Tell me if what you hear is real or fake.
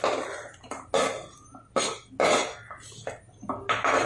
real